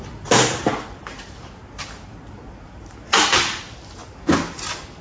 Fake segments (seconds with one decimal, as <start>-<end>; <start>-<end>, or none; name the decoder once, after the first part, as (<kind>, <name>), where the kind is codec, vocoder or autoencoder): none